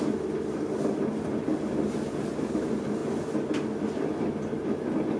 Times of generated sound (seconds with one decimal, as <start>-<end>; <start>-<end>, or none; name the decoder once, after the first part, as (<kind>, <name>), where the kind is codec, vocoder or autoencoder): none